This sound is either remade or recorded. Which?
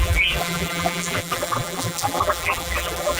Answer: remade